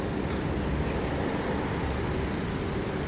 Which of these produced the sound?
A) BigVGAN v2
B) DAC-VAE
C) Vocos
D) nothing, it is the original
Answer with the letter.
D